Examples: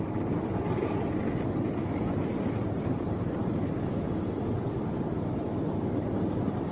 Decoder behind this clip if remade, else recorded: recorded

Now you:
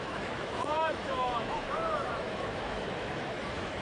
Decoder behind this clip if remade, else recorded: remade, autoencoder, DAC-VAE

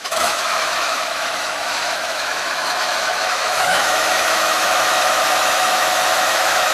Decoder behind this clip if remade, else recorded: remade, autoencoder, DAC-VAE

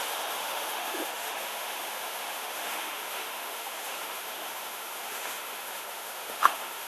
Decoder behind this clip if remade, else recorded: remade, autoencoder, DAC-VAE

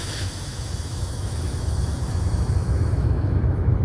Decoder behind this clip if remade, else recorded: remade, autoencoder, DAC-VAE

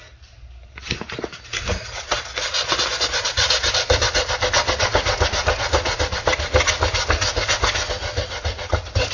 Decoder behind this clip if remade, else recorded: recorded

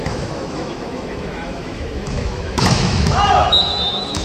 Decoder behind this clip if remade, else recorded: remade, autoencoder, DAC-VAE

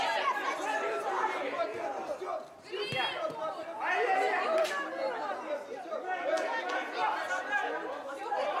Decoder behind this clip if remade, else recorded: recorded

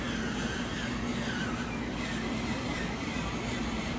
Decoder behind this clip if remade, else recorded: recorded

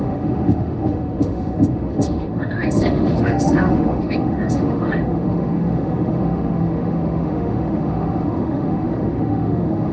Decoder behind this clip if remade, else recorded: remade, autoencoder, DAC-VAE